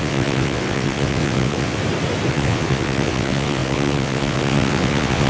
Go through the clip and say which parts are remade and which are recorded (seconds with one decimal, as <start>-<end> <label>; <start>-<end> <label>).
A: 0.0-1.8 remade; 1.8-2.3 recorded; 2.3-5.3 remade